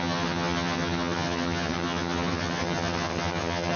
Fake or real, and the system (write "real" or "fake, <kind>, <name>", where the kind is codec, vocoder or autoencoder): fake, vocoder, HiFi-GAN